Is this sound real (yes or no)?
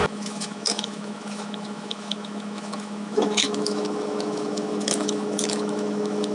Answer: no